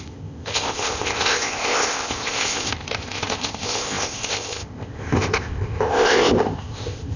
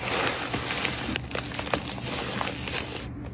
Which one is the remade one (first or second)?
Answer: first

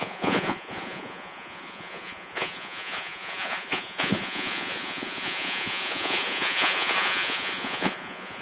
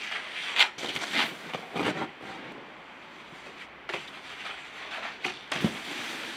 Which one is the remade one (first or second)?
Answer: first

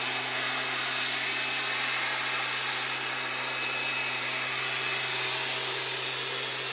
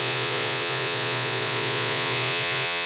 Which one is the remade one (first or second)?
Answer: second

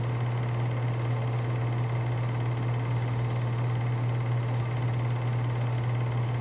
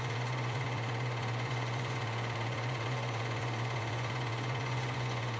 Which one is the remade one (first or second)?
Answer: second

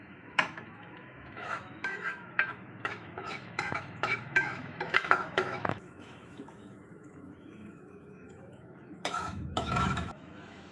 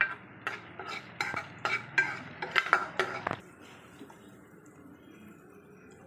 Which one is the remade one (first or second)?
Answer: first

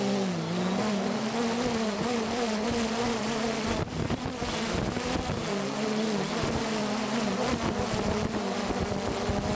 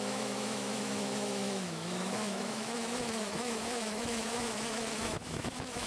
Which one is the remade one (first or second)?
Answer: second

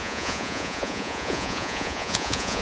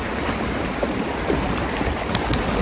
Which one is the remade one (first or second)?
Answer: first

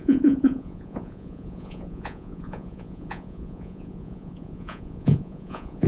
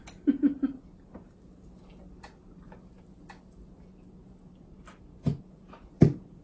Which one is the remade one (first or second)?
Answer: first